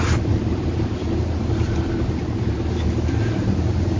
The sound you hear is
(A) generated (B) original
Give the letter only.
B